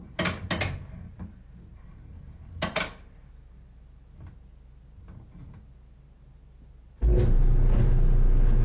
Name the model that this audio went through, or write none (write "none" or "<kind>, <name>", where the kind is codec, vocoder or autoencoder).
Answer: none